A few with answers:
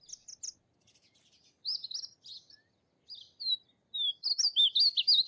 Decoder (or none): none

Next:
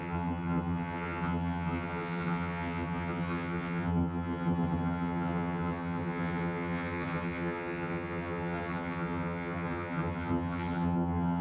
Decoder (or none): vocoder, HiFi-GAN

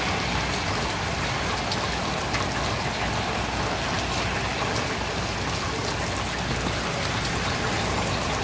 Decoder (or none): none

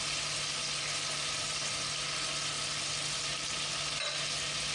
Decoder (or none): none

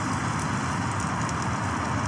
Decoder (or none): none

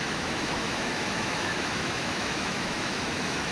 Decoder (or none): autoencoder, DAC-VAE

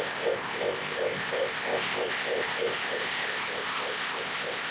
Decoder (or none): codec, ZipCodec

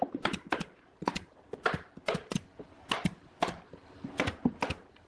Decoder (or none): none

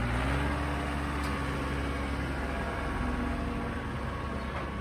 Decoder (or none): none